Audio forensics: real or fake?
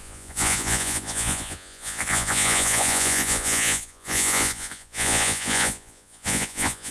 fake